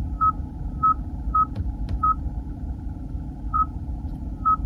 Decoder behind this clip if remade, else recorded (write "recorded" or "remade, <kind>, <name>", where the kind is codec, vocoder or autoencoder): remade, vocoder, BigVGAN v2